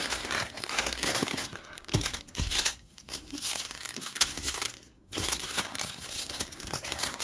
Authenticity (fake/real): fake